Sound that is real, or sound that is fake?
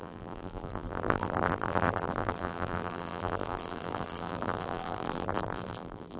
fake